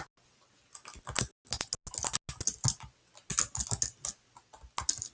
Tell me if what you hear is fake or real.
real